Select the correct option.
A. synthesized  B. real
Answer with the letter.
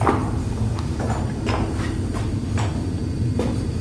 B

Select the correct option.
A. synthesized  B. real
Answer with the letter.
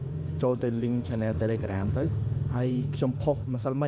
A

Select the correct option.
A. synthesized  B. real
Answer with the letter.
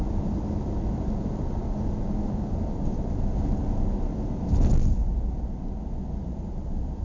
B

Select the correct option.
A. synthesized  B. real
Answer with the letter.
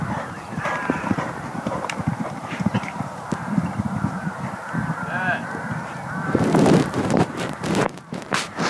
A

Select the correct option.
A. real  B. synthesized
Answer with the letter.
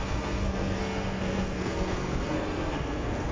B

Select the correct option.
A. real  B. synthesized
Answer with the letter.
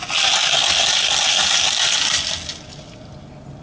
A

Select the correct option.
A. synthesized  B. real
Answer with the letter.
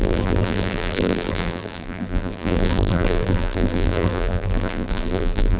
A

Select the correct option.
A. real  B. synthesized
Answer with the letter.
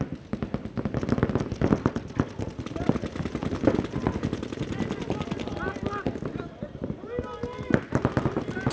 A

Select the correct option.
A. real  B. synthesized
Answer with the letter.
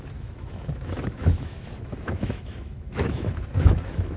B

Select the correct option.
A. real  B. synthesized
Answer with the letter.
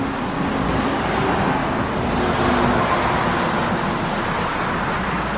A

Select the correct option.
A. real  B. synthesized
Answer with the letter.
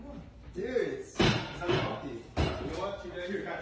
A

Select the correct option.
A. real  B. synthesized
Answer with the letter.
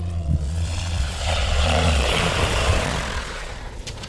B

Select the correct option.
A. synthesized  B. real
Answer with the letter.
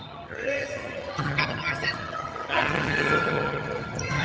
A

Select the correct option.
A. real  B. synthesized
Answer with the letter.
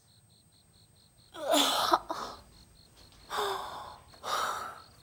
A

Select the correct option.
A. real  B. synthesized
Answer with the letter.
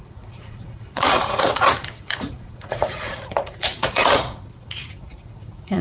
B